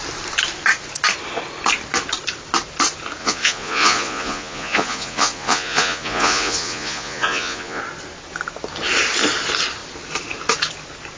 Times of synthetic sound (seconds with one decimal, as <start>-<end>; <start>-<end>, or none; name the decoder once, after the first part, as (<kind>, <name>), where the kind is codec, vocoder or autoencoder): 3.2-7.8 (vocoder, Vocos)